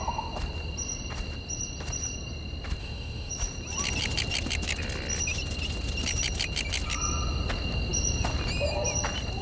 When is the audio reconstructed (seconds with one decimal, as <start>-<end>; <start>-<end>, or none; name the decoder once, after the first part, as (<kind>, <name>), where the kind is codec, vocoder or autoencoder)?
2.8-3.3 (autoencoder, DAC-VAE)